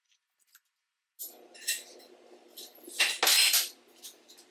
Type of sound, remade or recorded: recorded